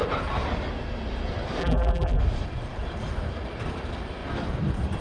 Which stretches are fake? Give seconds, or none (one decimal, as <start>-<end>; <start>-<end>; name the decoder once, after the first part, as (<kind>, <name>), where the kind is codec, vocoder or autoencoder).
1.6-2.2 (vocoder, BigVGAN v2)